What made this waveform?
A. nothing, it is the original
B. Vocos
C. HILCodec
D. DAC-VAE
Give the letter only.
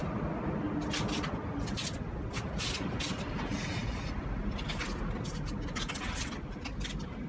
A